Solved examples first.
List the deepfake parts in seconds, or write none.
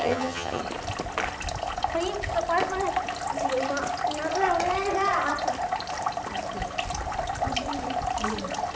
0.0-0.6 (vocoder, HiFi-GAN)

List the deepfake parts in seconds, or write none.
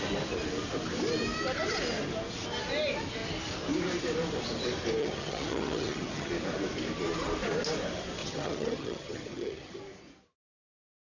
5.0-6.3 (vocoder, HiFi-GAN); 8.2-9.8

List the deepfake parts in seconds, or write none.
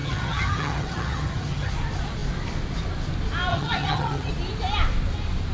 0.0-1.7 (vocoder, HiFi-GAN); 3.5-4.3